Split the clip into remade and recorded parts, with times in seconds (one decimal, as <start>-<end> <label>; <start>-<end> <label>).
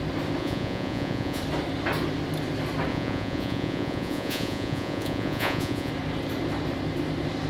0.0-0.4 recorded; 0.4-1.4 remade; 1.4-2.9 recorded; 2.9-5.9 remade; 5.9-7.5 recorded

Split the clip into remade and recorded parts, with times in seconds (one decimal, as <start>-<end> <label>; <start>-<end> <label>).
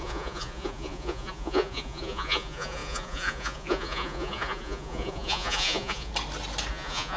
0.0-6.1 remade; 6.1-6.7 recorded; 6.7-7.2 remade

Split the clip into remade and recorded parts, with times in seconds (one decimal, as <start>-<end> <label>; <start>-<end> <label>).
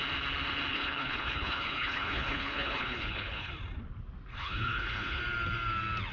0.0-0.7 recorded; 0.7-3.5 remade; 3.5-4.3 recorded; 4.3-5.2 remade; 5.2-6.1 recorded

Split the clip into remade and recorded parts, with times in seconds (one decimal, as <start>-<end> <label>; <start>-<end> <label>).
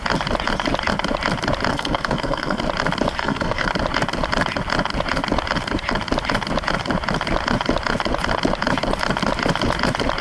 0.0-1.7 recorded; 1.7-2.6 remade; 2.6-3.2 recorded; 3.2-3.7 remade; 3.7-10.2 recorded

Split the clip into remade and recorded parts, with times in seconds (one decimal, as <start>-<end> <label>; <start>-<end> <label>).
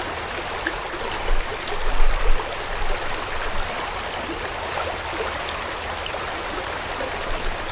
0.0-7.7 recorded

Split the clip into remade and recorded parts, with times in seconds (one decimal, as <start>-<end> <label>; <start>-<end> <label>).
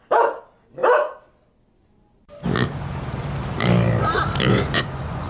0.0-4.5 recorded; 4.5-5.3 remade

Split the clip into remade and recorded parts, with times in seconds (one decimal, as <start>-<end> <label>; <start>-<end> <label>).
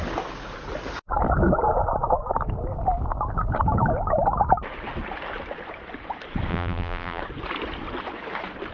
0.0-6.5 recorded; 6.5-7.2 remade; 7.2-8.7 recorded